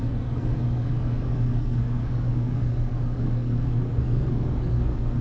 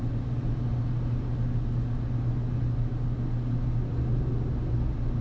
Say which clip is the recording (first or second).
second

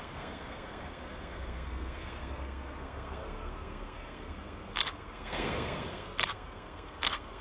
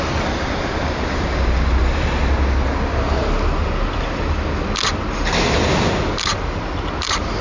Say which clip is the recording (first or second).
second